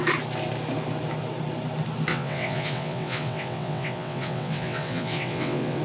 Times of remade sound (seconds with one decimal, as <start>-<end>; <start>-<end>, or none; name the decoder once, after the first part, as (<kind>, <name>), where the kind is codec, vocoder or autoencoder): 2.1-5.8 (vocoder, WaveNeXt)